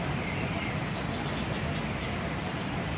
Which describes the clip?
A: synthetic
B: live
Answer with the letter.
B